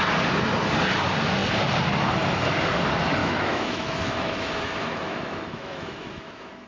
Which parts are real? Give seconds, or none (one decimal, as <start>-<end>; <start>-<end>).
0.0-3.2